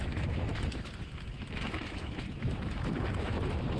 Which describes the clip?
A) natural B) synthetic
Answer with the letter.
B